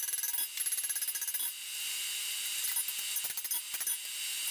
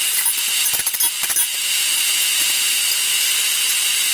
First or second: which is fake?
second